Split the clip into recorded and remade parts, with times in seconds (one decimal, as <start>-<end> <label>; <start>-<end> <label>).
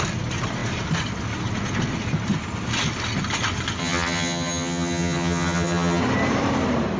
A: 0.0-3.8 recorded; 3.8-6.0 remade; 6.0-7.0 recorded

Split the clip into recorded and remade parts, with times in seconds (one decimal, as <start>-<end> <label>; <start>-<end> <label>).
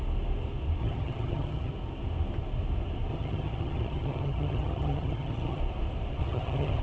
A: 0.0-0.8 recorded; 0.8-1.7 remade; 1.7-3.1 recorded; 3.1-5.6 remade; 5.6-6.2 recorded; 6.2-6.8 remade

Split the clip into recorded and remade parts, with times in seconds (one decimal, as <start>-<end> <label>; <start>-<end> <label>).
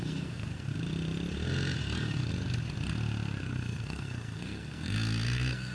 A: 0.0-0.7 remade; 0.7-3.4 recorded; 3.4-5.7 remade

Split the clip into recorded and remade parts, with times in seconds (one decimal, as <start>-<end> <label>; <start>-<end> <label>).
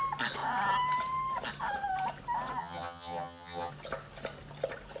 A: 0.0-2.6 recorded; 2.6-3.7 remade; 3.7-5.0 recorded